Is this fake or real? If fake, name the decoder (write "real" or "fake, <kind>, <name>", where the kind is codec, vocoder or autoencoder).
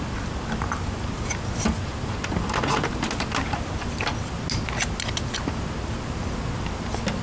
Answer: real